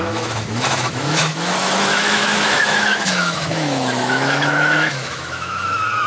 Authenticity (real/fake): fake